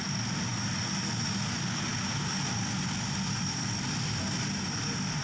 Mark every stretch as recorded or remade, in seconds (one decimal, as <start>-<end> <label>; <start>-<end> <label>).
0.0-5.2 recorded